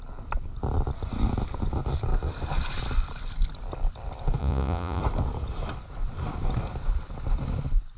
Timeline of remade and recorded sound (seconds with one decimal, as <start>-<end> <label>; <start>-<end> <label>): 0.0-4.4 recorded; 4.4-5.0 remade; 5.0-8.0 recorded